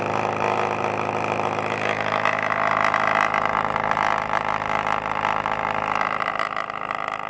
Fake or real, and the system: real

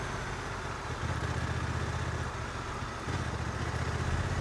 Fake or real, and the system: real